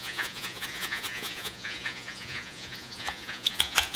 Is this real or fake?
fake